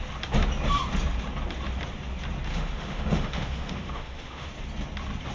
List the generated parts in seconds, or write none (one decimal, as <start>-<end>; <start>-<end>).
2.5-4.5